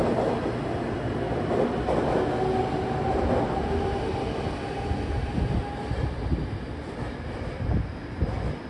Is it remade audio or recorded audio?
recorded